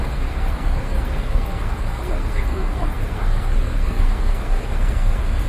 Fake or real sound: fake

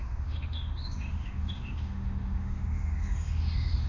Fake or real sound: fake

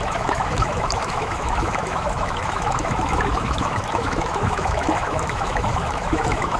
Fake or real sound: fake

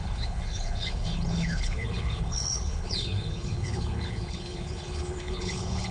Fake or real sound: fake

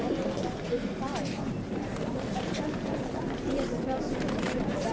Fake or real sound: fake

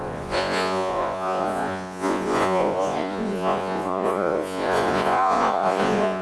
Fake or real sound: fake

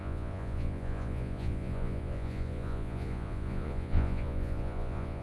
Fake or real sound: fake